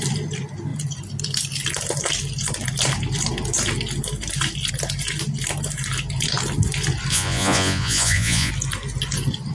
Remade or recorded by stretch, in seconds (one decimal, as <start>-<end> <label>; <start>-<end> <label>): 0.0-7.1 recorded; 7.1-8.5 remade; 8.5-9.5 recorded